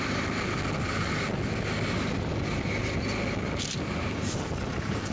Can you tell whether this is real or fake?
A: real